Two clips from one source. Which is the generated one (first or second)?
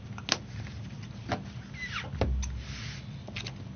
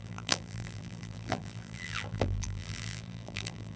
second